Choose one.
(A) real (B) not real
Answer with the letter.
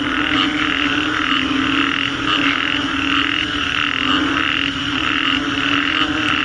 A